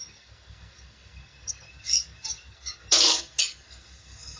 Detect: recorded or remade remade